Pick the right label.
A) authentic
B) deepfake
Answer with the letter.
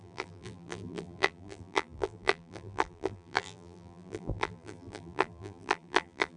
B